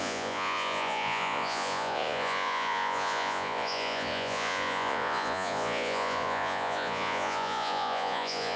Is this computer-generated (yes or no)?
yes